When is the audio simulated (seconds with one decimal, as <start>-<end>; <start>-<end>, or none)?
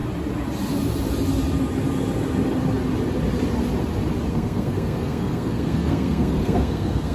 4.3-7.1